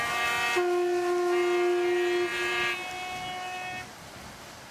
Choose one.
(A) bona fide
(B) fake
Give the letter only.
A